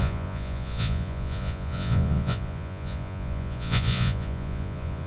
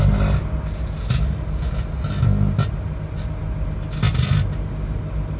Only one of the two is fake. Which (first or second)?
first